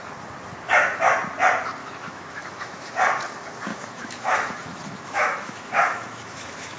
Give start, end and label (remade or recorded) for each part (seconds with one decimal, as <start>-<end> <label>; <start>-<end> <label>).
0.0-1.8 recorded; 1.8-2.9 remade; 2.9-3.7 recorded; 3.7-6.8 remade